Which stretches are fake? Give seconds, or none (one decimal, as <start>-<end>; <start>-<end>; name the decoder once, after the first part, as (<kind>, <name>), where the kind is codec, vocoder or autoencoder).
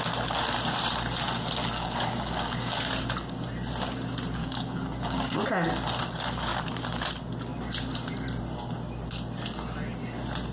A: 1.6-2.8 (codec, DAC); 4.4-5.4